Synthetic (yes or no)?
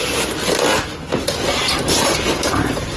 no